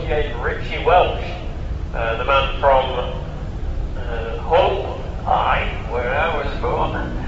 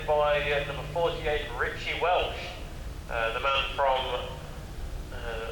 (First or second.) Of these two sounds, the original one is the second